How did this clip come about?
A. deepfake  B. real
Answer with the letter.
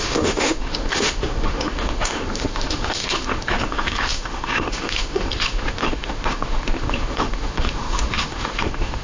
A